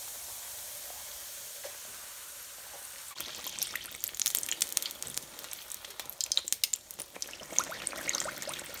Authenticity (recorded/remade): recorded